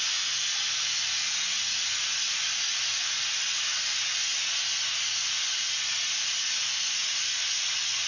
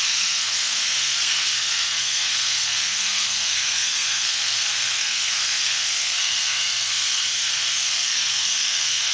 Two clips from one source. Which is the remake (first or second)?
second